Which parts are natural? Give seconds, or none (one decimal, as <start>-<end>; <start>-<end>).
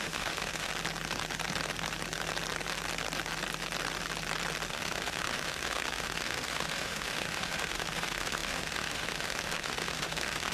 0.7-4.7